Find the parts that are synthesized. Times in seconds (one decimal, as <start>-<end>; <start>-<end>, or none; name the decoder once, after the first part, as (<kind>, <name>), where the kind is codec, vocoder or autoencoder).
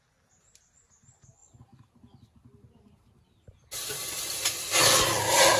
none